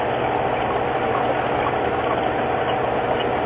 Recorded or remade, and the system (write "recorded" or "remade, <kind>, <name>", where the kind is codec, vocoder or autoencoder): recorded